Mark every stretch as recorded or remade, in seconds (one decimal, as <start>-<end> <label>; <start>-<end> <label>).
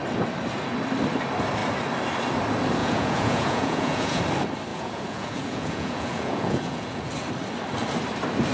0.0-2.8 recorded; 2.8-4.2 remade; 4.2-4.7 recorded; 4.7-7.1 remade; 7.1-8.5 recorded